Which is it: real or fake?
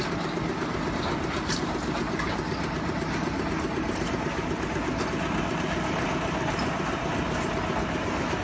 real